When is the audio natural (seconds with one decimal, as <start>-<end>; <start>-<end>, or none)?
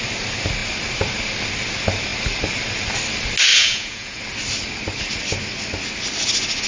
0.0-3.5; 4.2-6.7